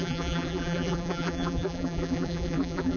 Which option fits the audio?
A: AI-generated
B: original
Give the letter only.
A